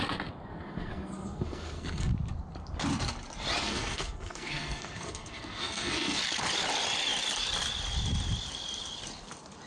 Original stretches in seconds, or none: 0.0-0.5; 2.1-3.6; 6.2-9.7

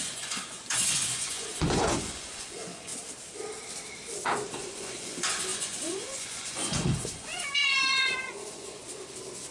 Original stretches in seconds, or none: 2.9-4.5; 8.8-9.5

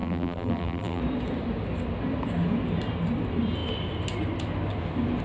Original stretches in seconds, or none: 1.0-5.2

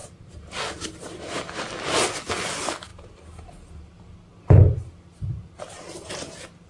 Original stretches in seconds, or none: 0.0-6.7

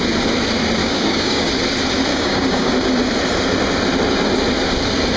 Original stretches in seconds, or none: 0.0-0.8; 1.5-2.1; 2.7-5.2